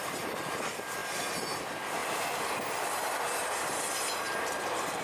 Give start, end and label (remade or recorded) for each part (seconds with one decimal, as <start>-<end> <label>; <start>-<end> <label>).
0.0-5.0 recorded